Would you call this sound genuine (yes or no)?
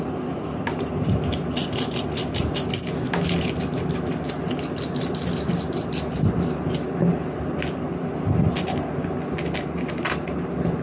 yes